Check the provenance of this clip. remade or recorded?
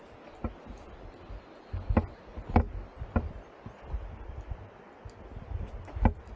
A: recorded